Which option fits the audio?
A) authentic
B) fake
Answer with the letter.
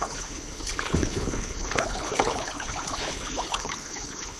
B